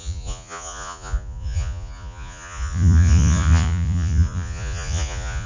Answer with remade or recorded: remade